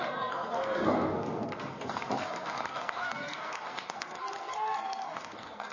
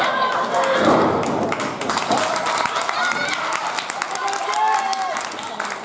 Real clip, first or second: second